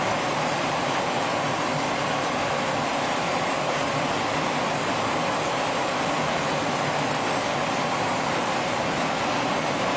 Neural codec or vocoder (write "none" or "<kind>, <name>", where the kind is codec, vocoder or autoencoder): vocoder, BigVGAN v2